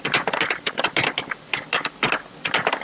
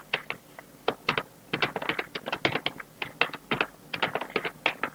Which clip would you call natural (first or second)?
second